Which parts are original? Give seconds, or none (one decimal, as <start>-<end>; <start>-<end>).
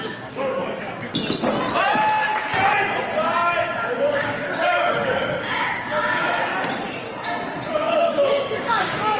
1.1-4.0; 6.5-7.7